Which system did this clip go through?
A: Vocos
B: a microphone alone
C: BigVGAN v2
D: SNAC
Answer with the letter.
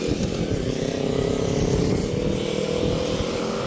B